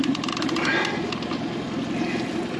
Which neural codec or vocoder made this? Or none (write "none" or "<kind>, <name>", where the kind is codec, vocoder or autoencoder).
none